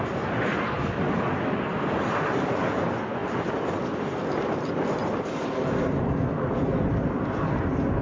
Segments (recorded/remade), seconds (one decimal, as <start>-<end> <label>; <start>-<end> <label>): 0.0-8.0 recorded